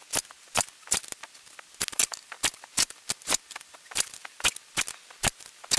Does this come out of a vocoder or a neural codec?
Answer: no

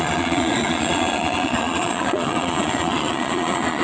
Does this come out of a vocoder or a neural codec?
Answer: yes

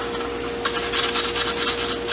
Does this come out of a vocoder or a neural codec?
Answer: no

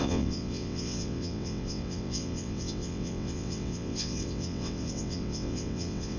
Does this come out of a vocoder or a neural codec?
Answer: yes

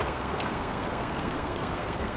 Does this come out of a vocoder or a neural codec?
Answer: yes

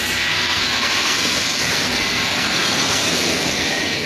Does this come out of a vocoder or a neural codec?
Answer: yes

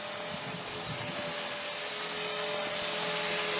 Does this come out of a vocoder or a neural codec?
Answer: no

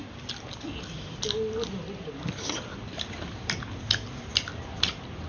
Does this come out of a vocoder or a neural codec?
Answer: yes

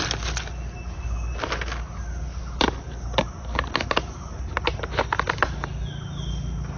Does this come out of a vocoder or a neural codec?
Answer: no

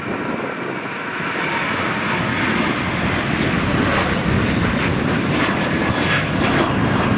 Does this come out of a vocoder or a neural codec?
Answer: no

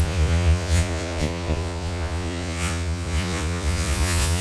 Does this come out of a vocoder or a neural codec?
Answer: yes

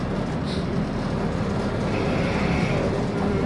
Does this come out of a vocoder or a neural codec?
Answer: no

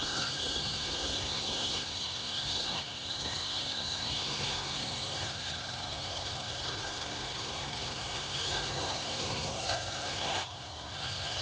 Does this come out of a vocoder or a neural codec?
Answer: yes